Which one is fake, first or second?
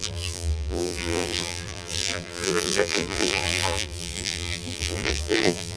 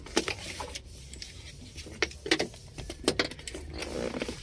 first